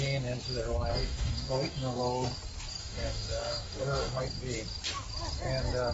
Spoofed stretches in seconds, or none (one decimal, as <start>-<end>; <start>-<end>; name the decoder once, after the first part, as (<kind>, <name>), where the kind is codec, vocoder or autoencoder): 0.9-2.0 (codec, DAC); 2.8-4.2